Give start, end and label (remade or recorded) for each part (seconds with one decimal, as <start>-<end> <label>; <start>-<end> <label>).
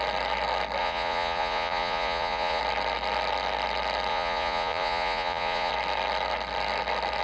0.0-0.8 recorded; 0.8-2.6 remade; 2.6-4.1 recorded; 4.1-5.7 remade; 5.7-7.2 recorded